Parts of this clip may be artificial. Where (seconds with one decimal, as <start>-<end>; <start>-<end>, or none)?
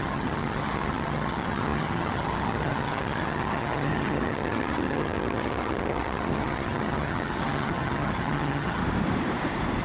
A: 0.0-8.8